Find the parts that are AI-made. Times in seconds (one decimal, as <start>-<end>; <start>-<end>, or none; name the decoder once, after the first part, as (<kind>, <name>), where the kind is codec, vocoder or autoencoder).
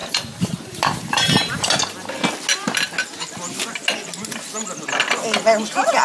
0.0-1.8 (vocoder, BigVGAN v2)